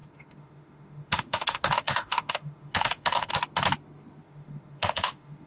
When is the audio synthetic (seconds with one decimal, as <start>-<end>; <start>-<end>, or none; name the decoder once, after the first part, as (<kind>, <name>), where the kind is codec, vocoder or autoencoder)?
0.0-3.3 (autoencoder, DAC-VAE); 4.2-5.5